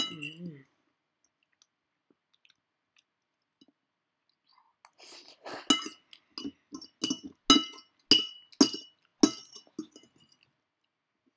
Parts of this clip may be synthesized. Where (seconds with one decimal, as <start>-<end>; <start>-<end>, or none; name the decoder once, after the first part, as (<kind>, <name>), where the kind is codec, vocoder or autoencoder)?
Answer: none